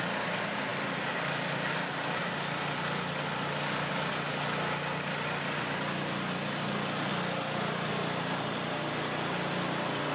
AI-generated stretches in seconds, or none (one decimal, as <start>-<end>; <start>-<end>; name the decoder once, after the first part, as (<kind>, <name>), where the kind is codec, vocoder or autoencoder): none